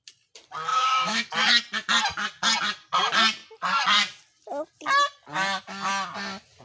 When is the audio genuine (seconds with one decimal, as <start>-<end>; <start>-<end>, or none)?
0.0-0.7; 1.3-6.6